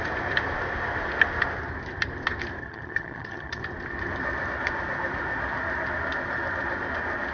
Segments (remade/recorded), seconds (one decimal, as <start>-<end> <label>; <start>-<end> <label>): 0.0-2.6 recorded; 2.6-3.6 remade; 3.6-7.3 recorded